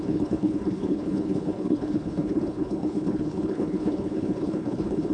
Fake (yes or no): yes